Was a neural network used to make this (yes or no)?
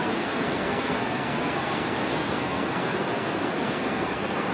yes